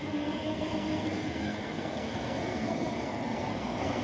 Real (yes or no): no